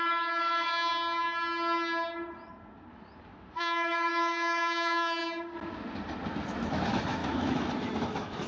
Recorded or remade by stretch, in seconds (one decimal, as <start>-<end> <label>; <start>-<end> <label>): 0.0-0.9 remade; 0.9-3.3 recorded; 3.3-5.2 remade; 5.2-6.3 recorded; 6.3-8.5 remade